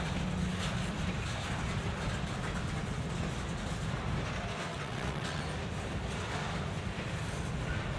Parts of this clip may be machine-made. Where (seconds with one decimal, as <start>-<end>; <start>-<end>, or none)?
4.7-5.4